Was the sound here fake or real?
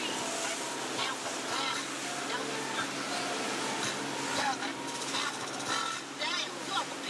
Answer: real